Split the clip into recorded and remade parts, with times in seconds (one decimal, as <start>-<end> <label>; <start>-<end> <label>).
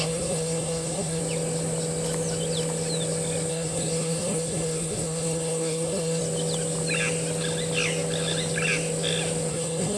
0.0-1.2 remade; 1.2-3.5 recorded; 3.5-6.2 remade; 6.2-9.5 recorded; 9.5-10.0 remade